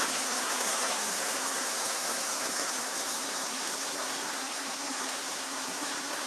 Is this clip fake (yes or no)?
yes